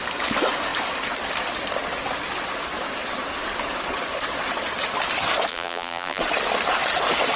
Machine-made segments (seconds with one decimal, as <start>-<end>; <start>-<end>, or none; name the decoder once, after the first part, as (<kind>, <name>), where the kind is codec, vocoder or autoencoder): 5.5-6.2 (vocoder, BigVGAN v2)